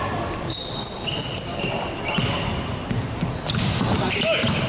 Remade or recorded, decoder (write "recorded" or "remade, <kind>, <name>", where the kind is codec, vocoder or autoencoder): recorded